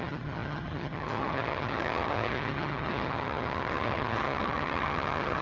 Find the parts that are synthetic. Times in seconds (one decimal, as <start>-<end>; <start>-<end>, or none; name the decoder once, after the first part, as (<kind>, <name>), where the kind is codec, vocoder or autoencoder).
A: 0.0-5.4 (vocoder, HiFi-GAN)